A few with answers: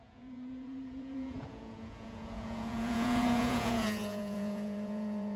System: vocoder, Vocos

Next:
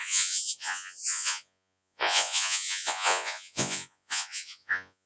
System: vocoder, Vocos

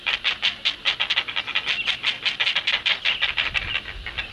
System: none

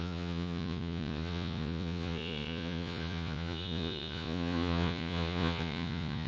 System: vocoder, Vocos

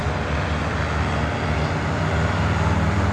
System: none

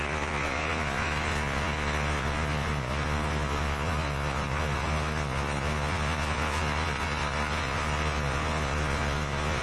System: vocoder, Vocos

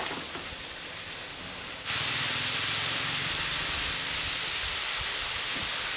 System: none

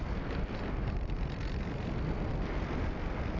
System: none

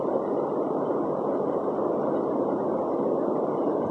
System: none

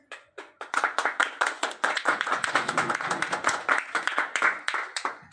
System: vocoder, Vocos